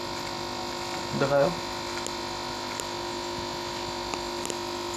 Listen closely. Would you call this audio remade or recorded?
recorded